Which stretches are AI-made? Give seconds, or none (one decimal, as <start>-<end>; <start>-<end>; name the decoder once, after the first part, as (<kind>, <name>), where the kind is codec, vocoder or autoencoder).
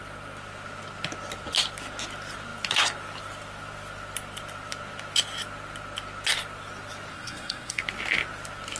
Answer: 7.1-7.8 (codec, SNAC)